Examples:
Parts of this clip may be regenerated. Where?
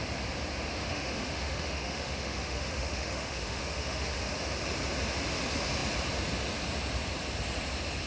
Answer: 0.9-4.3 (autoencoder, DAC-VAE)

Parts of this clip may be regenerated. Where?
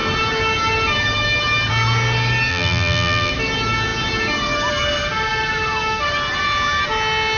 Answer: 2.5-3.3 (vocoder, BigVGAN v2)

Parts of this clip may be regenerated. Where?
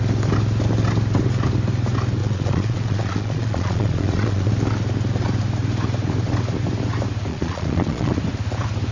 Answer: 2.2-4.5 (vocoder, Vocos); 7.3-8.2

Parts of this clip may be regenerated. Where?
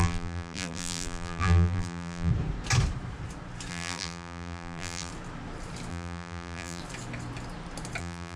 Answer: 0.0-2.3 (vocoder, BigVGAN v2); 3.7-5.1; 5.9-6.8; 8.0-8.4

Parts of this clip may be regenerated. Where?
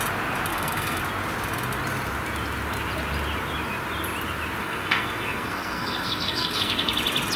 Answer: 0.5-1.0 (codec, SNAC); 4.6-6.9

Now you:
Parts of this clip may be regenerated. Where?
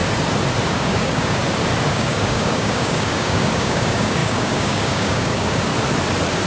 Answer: 0.7-1.4 (codec, DAC); 1.9-5.7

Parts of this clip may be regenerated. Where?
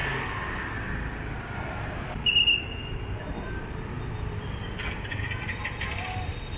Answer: none